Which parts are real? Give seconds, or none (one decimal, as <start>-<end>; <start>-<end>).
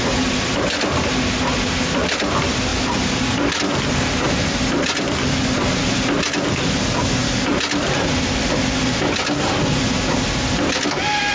0.0-11.3